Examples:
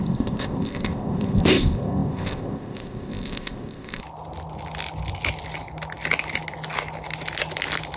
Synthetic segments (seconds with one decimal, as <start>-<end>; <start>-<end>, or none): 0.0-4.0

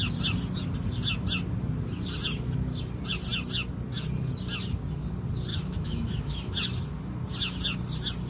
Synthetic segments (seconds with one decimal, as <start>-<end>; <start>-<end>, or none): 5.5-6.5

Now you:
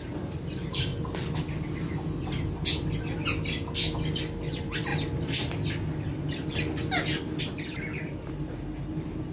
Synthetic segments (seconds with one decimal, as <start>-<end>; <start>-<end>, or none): 0.0-0.9; 4.5-4.9; 7.4-9.3